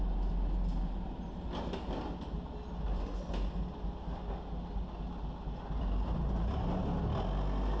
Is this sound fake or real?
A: real